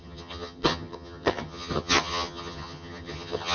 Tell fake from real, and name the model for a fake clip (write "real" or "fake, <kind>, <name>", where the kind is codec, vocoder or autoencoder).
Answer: fake, vocoder, HiFi-GAN